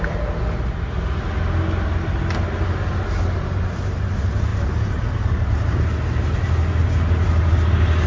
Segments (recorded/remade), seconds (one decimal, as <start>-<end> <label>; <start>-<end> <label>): 0.0-4.5 recorded; 4.5-5.8 remade; 5.8-8.1 recorded